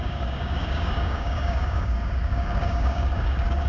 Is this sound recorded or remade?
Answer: remade